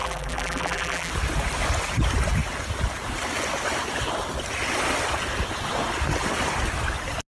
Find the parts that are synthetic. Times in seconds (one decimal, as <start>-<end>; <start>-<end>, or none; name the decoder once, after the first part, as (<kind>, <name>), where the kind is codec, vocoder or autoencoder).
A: 0.0-1.1 (vocoder, BigVGAN v2)